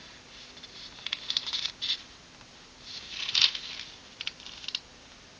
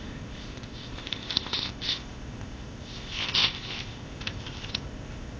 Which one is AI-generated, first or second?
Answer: second